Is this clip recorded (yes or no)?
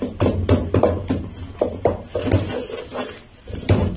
yes